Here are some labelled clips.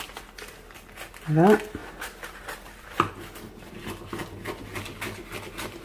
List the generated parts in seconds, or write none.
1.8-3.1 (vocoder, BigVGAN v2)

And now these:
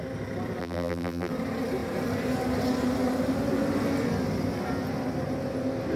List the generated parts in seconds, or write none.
0.6-1.3 (vocoder, BigVGAN v2)

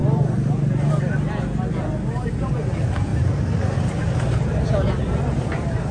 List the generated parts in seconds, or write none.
none

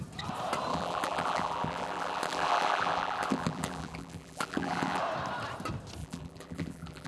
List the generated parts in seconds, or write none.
0.7-5.0 (vocoder, BigVGAN v2); 6.0-7.1

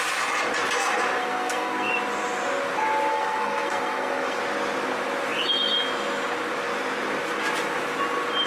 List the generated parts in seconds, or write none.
1.2-1.9 (codec, SNAC); 3.1-4.4

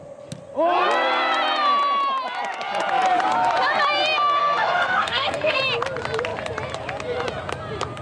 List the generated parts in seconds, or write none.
4.4-5.6 (codec, SNAC)

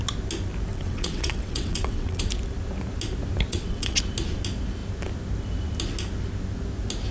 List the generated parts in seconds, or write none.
0.7-2.3 (vocoder, WaveNeXt); 3.5-4.0

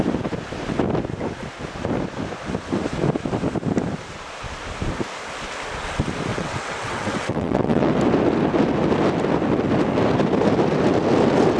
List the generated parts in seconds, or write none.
6.3-7.9 (vocoder, WaveNeXt)